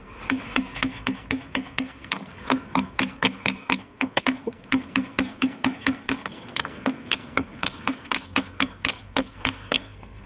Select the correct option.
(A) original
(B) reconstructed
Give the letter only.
B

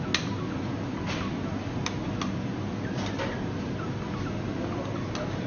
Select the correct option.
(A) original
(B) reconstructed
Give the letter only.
A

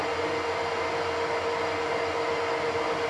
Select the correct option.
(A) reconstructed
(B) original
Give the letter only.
B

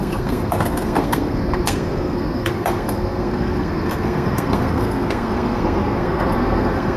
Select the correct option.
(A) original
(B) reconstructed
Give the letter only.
B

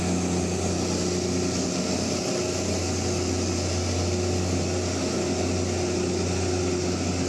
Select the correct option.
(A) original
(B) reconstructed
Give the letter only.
A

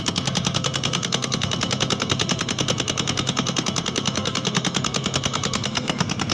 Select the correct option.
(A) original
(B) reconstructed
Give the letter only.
B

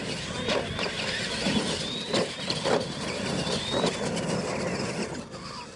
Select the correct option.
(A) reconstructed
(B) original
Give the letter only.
B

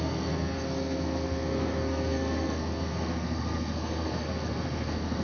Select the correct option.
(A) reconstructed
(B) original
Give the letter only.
A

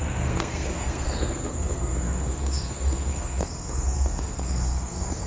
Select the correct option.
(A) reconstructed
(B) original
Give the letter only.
A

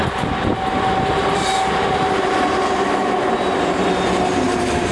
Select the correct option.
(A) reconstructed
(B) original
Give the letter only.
B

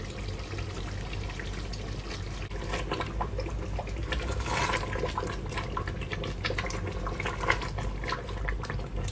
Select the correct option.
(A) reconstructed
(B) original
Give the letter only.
B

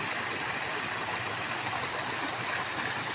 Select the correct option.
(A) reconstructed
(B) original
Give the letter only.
B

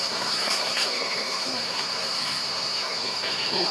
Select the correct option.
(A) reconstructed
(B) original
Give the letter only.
A